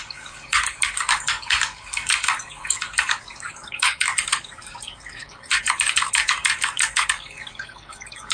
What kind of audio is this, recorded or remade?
remade